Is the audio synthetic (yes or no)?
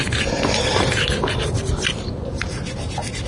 no